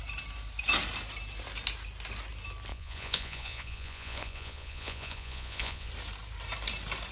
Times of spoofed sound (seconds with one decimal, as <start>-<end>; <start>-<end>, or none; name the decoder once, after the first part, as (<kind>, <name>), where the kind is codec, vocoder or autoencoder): 2.7-5.9 (vocoder, Vocos)